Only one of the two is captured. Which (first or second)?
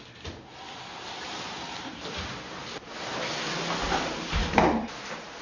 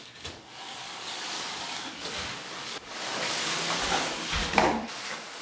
first